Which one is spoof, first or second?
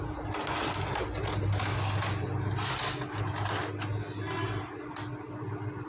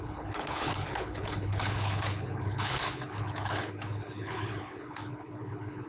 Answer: second